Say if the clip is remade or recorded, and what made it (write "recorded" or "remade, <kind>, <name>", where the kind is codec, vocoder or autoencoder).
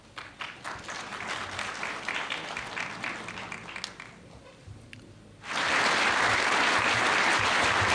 recorded